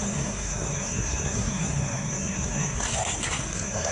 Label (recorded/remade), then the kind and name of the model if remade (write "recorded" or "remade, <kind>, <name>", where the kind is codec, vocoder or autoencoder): remade, codec, SNAC